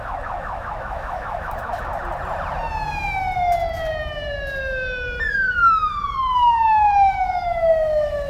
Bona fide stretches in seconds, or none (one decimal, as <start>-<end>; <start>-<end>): 1.9-5.3